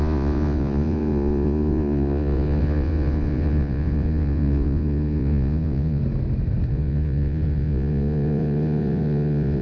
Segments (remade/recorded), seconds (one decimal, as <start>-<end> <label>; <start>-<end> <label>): 0.0-6.0 remade; 6.0-6.7 recorded; 6.7-9.6 remade